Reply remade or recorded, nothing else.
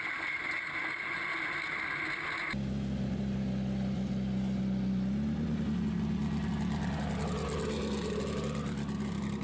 recorded